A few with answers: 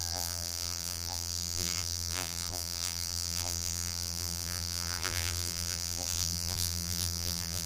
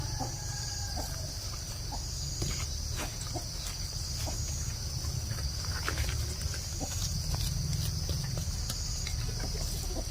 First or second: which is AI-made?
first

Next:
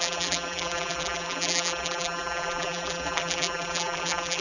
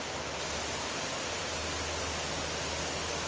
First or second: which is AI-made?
first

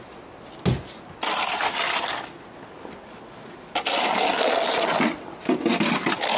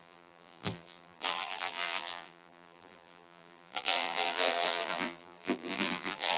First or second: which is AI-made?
second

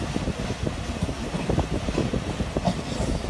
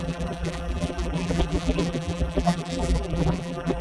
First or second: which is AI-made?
second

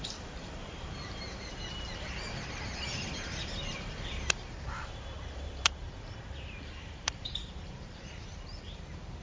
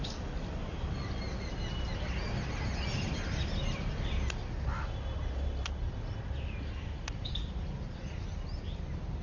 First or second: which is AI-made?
first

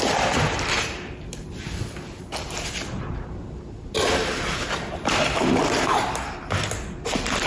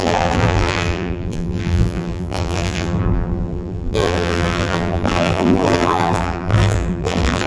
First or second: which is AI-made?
second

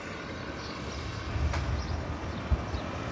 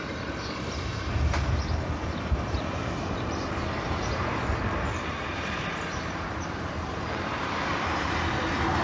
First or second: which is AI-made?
second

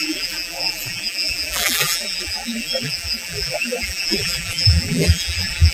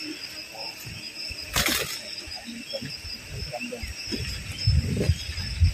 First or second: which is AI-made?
first